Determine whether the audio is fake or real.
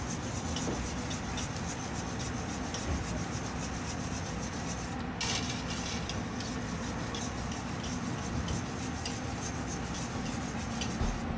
real